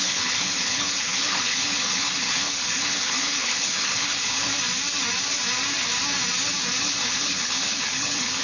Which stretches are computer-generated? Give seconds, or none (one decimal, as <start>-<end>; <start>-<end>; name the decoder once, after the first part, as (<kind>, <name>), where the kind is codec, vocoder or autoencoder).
0.0-4.5 (codec, HILCodec); 6.8-8.4